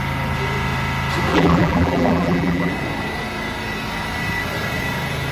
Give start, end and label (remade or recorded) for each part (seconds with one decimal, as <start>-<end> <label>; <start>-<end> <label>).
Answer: 0.0-1.3 recorded; 1.3-2.7 remade; 2.7-5.3 recorded